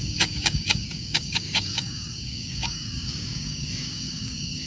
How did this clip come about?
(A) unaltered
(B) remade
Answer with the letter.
B